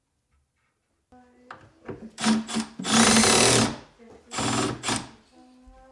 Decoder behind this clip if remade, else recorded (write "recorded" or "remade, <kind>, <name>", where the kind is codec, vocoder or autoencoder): recorded